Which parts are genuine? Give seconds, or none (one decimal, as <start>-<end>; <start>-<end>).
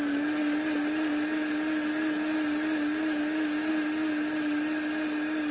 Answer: 0.0-5.5